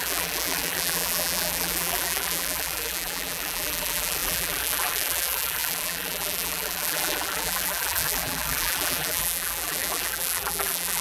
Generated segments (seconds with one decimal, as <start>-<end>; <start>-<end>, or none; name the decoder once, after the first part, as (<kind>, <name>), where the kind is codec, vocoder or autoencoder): 0.0-11.0 (vocoder, BigVGAN v2)